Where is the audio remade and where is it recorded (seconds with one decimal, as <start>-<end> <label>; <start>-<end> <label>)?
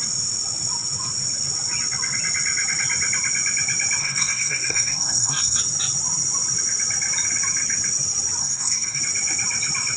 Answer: 0.0-4.0 recorded; 4.0-5.6 remade; 5.6-8.4 recorded; 8.4-9.0 remade; 9.0-10.0 recorded